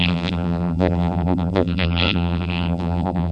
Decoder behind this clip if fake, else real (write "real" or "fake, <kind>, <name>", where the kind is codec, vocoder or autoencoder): fake, vocoder, BigVGAN v2